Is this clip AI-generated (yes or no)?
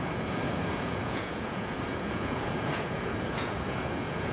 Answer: yes